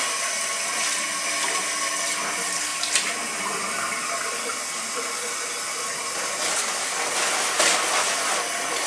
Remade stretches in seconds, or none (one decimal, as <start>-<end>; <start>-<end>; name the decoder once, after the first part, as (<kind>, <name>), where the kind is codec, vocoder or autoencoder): none